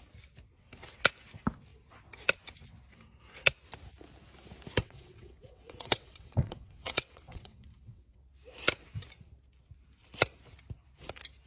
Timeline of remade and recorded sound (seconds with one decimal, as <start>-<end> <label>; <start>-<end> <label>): 0.0-4.8 recorded; 4.8-8.2 remade; 8.2-11.5 recorded